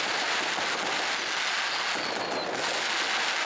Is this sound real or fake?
real